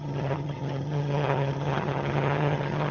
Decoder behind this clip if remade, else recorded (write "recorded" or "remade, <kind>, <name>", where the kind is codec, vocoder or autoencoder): remade, vocoder, HiFi-GAN